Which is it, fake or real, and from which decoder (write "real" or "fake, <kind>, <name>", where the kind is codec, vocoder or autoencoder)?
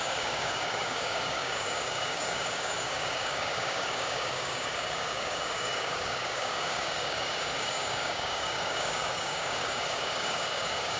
fake, codec, DAC